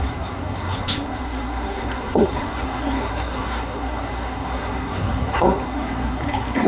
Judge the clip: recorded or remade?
remade